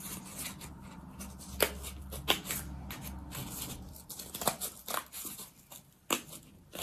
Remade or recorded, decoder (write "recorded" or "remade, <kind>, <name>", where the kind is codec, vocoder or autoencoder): recorded